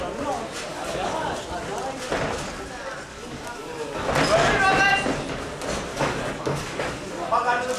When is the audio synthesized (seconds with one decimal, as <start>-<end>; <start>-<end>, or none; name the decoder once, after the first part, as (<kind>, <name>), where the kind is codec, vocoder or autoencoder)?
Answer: 0.7-1.3 (codec, DAC); 3.1-4.1; 5.9-7.3